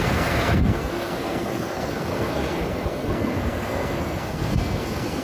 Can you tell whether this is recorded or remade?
remade